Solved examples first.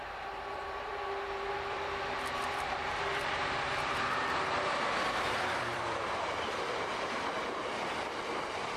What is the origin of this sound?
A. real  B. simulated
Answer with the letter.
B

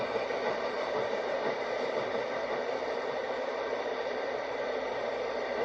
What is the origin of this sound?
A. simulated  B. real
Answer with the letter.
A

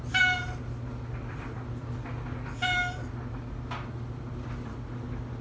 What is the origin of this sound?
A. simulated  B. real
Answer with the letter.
B